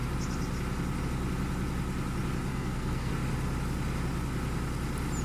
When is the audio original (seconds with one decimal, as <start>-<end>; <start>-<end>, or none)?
0.0-2.5; 3.1-5.2